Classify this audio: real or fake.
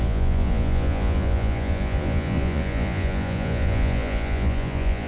fake